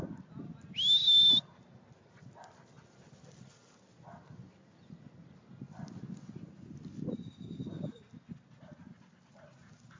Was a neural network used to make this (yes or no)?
no